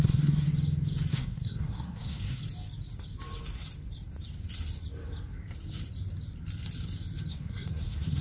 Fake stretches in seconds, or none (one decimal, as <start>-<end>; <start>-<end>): 0.0-0.5; 1.1-2.4; 7.3-8.2